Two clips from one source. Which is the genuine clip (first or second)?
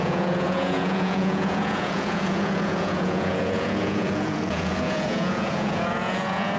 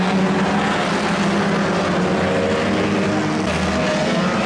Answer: second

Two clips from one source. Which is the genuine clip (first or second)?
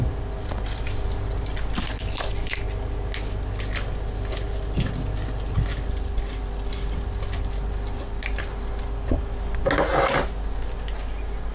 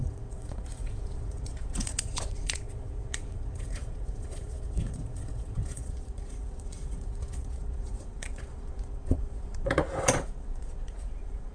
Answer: first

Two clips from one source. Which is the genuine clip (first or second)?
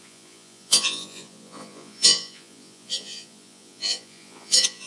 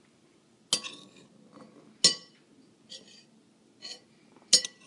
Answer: second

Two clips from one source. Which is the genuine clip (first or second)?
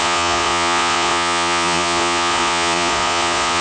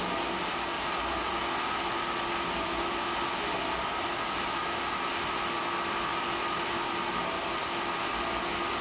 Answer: second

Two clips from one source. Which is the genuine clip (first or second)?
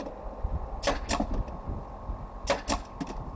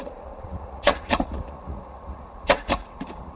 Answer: first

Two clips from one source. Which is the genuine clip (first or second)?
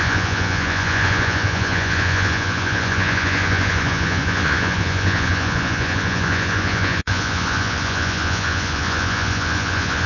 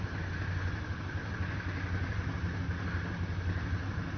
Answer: second